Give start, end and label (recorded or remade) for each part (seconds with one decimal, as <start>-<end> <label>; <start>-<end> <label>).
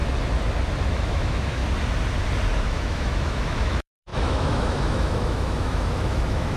0.0-0.9 recorded; 0.9-1.6 remade; 1.6-2.6 recorded; 2.6-6.6 remade